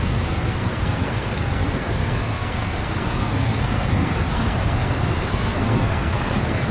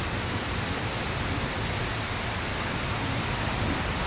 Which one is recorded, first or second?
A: second